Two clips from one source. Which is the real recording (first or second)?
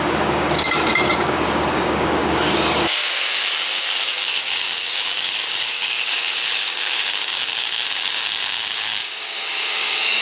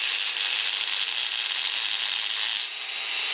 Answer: second